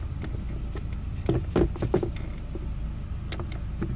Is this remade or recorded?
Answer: recorded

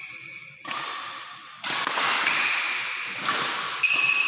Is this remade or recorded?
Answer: recorded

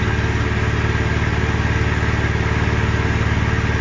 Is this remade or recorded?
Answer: recorded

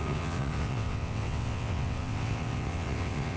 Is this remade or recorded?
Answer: remade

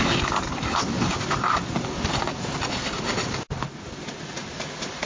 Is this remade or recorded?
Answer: recorded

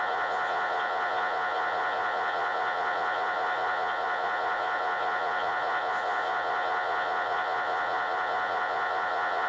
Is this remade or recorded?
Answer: remade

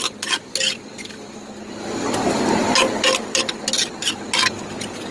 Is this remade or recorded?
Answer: recorded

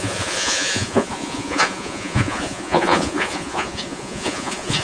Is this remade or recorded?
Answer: remade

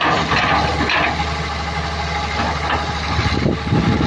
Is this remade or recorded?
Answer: recorded